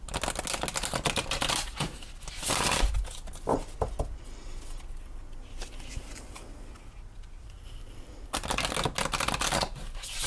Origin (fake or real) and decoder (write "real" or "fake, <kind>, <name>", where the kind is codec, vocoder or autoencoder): real